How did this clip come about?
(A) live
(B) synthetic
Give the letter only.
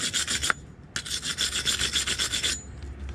A